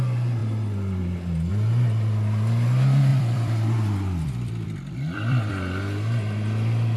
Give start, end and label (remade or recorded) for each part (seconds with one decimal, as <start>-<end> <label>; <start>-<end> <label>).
0.0-3.1 recorded; 3.1-5.5 remade; 5.5-7.0 recorded